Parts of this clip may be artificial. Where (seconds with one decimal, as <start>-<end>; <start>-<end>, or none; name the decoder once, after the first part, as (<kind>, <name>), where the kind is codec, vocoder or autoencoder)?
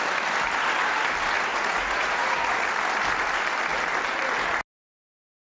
1.5-2.4 (vocoder, Vocos)